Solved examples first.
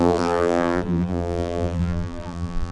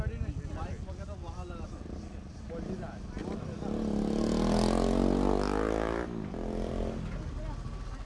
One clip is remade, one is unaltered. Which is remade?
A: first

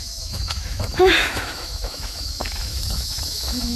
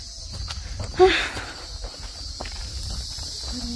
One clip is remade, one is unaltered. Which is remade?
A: first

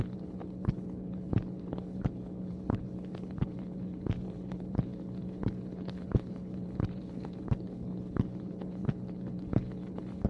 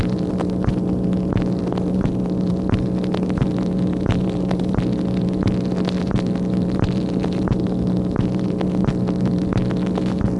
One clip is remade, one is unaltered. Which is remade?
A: first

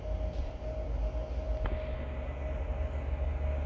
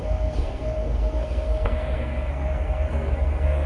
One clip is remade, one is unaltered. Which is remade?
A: second